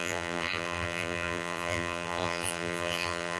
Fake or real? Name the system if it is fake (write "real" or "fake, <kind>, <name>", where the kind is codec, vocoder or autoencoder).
fake, vocoder, BigVGAN v2